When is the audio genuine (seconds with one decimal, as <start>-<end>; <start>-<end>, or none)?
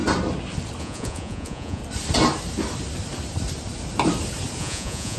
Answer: 0.0-0.8; 1.8-4.6